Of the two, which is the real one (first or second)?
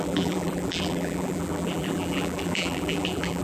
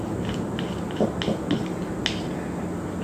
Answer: second